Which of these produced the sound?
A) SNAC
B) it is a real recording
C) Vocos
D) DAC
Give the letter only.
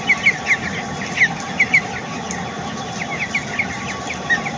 B